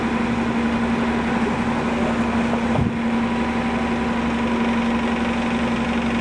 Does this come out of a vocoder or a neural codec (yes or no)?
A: no